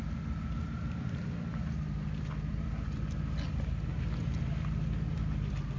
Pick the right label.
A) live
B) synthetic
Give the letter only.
A